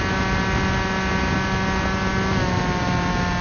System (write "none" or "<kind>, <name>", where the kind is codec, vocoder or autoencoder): none